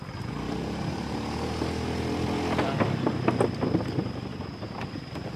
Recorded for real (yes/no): yes